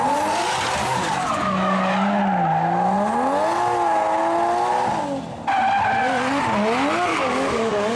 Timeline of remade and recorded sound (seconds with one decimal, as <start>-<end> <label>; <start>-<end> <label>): 0.0-0.8 recorded; 0.8-2.2 remade; 2.2-7.1 recorded; 7.1-8.0 remade